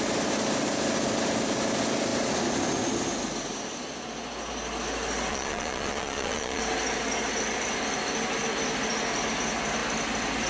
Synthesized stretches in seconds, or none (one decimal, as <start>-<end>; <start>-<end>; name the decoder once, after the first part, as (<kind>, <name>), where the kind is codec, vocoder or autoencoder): 5.3-6.6 (vocoder, Vocos)